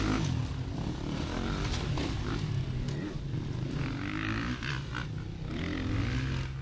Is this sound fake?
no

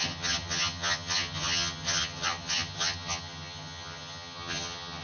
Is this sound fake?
yes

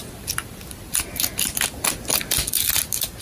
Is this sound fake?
no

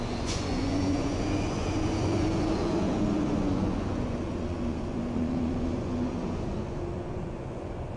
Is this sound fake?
yes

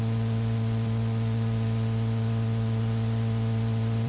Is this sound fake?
yes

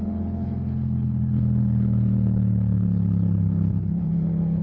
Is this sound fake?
yes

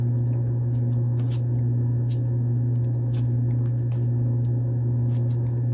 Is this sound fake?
no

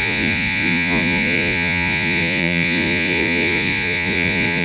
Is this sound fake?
yes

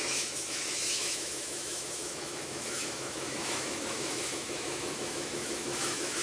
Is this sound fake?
yes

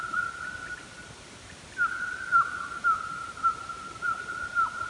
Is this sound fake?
no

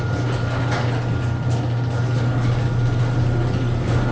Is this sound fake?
no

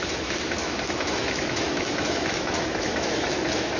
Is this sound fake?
yes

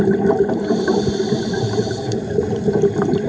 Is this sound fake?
no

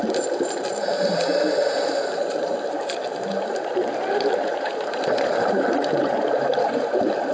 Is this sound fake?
yes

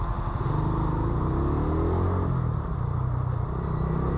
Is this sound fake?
no